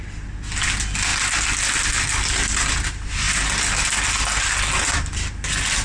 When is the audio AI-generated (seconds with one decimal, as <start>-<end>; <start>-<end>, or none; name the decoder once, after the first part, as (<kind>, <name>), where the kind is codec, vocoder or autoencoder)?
none